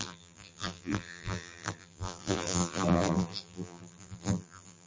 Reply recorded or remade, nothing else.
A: remade